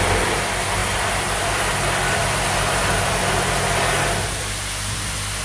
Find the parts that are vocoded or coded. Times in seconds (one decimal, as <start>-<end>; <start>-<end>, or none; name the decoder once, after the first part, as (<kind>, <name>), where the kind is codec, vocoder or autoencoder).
none